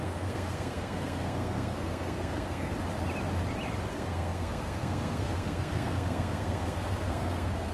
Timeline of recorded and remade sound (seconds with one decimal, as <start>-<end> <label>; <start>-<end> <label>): 0.0-2.7 remade; 2.7-3.9 recorded; 3.9-7.7 remade